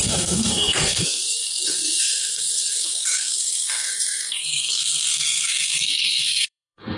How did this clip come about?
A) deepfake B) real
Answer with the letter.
A